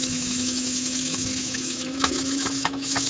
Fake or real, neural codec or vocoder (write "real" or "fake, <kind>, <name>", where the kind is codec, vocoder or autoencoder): fake, autoencoder, DAC-VAE